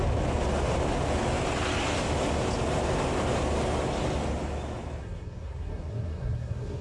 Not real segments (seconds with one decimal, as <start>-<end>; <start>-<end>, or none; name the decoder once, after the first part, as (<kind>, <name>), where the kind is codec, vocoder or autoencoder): 5.0-6.8 (codec, SNAC)